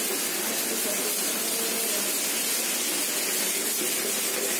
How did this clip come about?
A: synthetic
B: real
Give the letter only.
B